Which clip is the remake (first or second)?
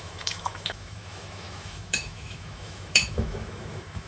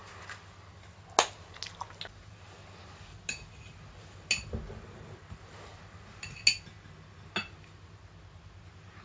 first